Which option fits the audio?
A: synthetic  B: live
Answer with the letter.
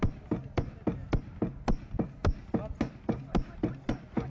B